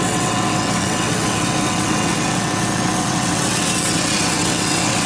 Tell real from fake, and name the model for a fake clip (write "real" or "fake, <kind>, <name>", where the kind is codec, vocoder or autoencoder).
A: fake, vocoder, WaveNeXt